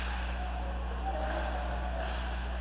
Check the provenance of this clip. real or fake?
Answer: real